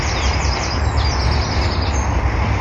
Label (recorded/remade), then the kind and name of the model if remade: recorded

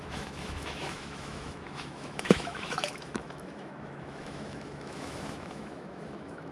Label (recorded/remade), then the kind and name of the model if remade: remade, autoencoder, DAC-VAE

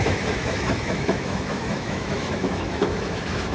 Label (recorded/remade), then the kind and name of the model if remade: remade, autoencoder, DAC-VAE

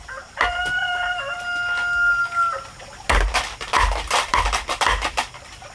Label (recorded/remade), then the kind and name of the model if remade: recorded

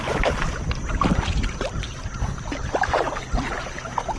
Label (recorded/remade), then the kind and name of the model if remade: recorded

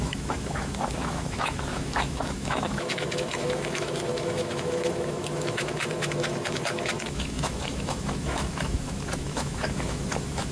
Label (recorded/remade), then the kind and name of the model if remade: remade, autoencoder, DAC-VAE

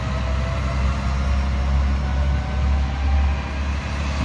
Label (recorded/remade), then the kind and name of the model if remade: recorded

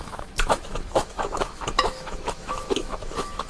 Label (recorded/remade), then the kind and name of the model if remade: remade, autoencoder, DAC-VAE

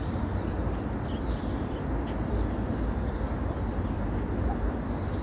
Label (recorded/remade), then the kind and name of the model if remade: recorded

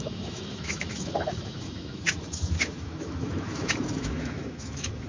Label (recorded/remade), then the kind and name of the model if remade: remade, autoencoder, DAC-VAE